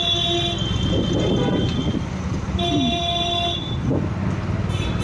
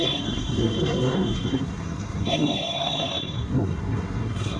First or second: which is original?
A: first